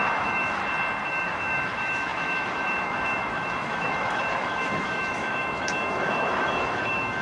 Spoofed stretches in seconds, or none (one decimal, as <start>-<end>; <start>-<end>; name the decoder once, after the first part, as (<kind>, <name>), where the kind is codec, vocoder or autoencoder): 0.0-0.6 (autoencoder, DAC-VAE); 1.1-7.2